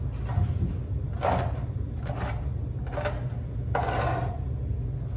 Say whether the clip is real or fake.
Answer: real